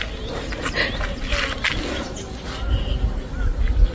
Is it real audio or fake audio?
real